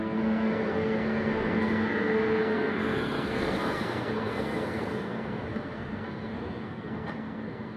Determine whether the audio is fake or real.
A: fake